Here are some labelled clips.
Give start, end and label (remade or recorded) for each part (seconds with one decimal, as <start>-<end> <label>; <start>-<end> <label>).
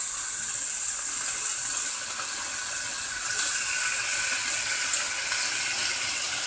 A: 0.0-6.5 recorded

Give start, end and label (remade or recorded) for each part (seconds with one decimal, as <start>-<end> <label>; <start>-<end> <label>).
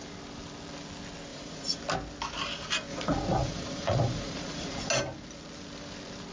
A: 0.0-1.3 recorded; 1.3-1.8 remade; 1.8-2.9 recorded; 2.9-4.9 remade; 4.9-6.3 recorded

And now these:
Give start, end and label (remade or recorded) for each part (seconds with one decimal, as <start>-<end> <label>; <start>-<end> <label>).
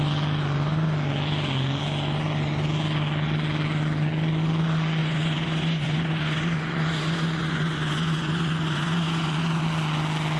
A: 0.0-5.0 recorded; 5.0-9.6 remade; 9.6-10.4 recorded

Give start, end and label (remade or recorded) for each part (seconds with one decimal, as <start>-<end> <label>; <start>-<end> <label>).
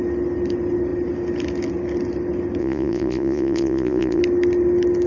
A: 0.0-2.6 recorded; 2.6-4.2 remade; 4.2-5.1 recorded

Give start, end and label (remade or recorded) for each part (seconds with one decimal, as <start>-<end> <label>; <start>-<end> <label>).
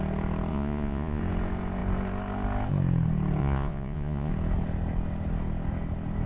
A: 0.0-0.5 recorded; 0.5-1.2 remade; 1.2-3.4 recorded; 3.4-4.3 remade; 4.3-6.3 recorded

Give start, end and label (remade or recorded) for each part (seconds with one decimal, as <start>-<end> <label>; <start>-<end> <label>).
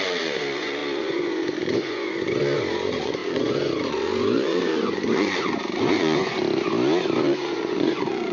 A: 0.0-6.4 remade; 6.4-7.2 recorded; 7.2-8.3 remade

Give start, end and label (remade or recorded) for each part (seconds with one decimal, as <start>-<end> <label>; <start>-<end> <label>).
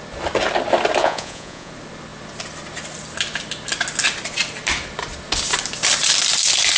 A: 0.0-1.0 recorded; 1.0-1.7 remade; 1.7-6.8 recorded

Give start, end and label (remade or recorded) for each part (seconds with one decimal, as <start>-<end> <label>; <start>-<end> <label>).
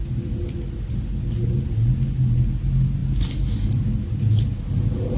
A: 0.0-5.2 recorded